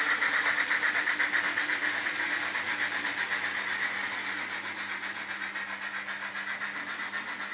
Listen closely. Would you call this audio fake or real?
real